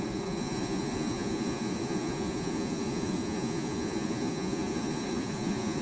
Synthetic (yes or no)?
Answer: yes